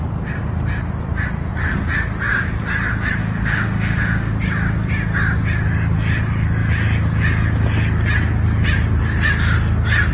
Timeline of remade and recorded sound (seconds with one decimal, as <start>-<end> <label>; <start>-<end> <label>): 0.0-3.2 recorded; 3.2-4.3 remade; 4.3-10.1 recorded